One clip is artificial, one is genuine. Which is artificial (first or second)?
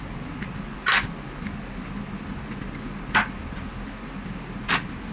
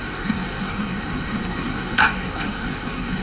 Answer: second